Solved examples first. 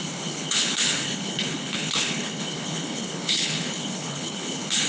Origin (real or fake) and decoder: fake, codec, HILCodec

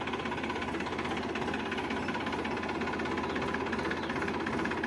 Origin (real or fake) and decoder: real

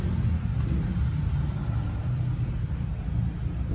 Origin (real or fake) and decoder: real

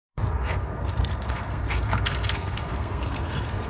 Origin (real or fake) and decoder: fake, codec, SNAC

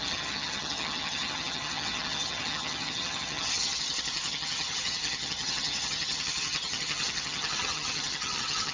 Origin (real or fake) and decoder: fake, vocoder, HiFi-GAN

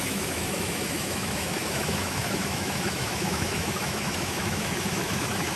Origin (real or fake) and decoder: fake, autoencoder, DAC-VAE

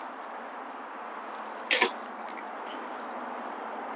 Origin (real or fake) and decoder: real